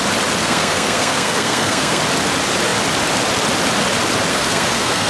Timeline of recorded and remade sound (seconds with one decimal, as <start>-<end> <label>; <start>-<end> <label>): 0.0-0.4 recorded; 0.4-2.0 remade; 2.0-4.3 recorded; 4.3-5.1 remade